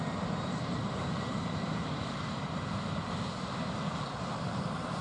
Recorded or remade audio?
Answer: remade